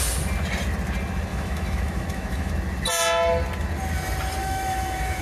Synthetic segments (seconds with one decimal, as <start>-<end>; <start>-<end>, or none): 1.3-2.5; 4.4-5.2